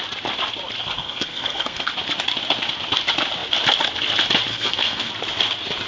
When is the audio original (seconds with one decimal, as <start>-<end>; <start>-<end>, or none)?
0.0-0.8; 1.9-4.5; 5.1-5.9